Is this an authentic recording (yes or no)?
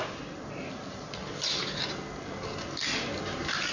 yes